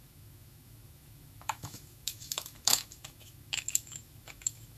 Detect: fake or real fake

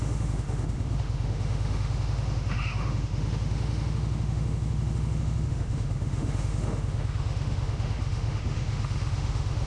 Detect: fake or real fake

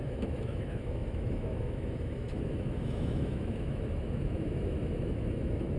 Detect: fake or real fake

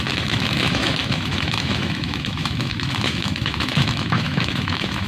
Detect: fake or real fake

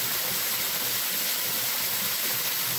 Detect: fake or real real